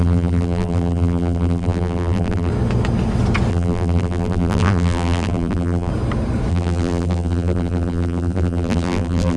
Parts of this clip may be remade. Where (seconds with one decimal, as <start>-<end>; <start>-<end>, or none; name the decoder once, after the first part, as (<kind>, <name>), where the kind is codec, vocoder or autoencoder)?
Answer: 0.0-2.5 (vocoder, BigVGAN v2); 3.5-5.9; 6.5-9.4